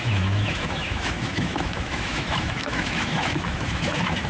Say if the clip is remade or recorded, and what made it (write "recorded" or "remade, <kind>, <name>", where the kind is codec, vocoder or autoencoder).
remade, autoencoder, DAC-VAE